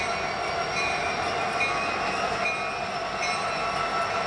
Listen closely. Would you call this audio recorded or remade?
recorded